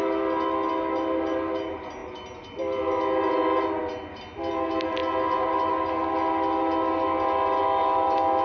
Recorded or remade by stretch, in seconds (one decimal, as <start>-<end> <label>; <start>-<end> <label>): 0.0-8.4 recorded